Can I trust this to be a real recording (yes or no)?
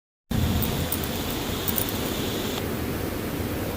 yes